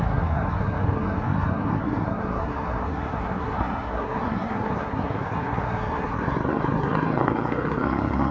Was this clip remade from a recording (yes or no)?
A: yes